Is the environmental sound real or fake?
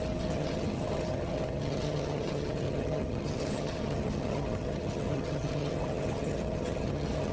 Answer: fake